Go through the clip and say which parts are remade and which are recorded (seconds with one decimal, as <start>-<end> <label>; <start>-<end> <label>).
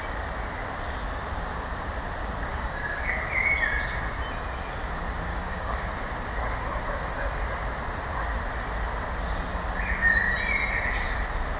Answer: 0.0-2.5 recorded; 2.5-3.2 remade; 3.2-5.3 recorded; 5.3-5.9 remade; 5.9-11.6 recorded